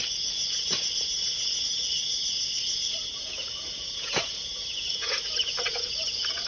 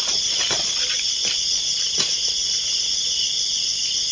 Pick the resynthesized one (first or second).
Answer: first